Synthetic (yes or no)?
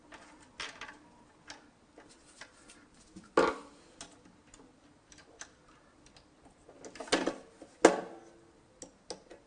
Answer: no